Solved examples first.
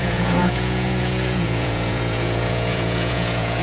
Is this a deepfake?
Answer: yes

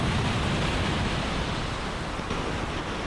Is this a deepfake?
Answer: no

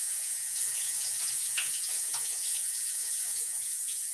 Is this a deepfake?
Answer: yes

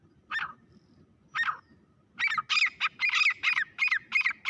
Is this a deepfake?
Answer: no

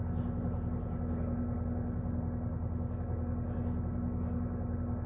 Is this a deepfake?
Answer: no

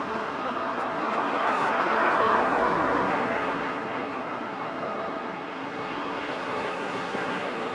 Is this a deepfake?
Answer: yes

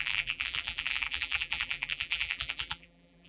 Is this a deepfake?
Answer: yes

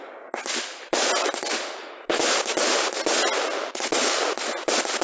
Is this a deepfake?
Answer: no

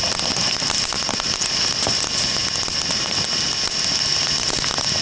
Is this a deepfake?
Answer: no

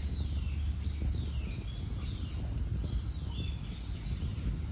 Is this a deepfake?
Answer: no